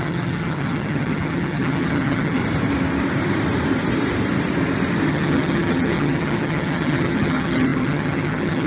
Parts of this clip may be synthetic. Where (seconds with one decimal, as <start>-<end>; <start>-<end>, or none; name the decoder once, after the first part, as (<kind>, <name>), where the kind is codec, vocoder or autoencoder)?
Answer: 0.0-2.4 (vocoder, HiFi-GAN); 5.1-8.7